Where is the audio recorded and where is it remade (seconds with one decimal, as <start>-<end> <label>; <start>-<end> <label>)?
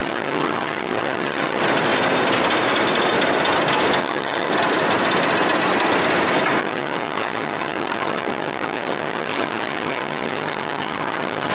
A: 0.0-1.6 remade; 1.6-4.0 recorded; 4.0-4.5 remade; 4.5-6.6 recorded; 6.6-11.5 remade